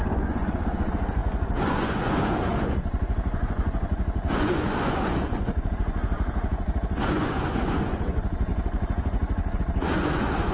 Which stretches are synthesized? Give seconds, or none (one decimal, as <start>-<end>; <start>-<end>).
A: 0.0-10.5

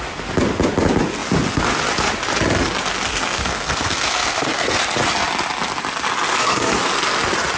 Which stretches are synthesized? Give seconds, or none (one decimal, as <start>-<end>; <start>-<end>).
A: 3.1-4.8; 6.3-6.9

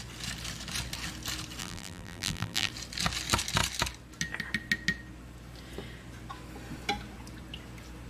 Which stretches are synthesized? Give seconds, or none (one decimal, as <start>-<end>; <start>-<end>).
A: 1.6-2.7

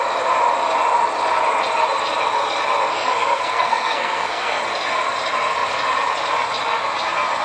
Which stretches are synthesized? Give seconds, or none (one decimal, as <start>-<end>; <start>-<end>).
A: 2.9-4.6

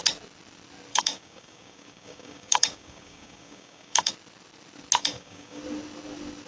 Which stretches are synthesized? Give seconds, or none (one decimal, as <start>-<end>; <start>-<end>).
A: 0.9-4.1; 5.0-5.6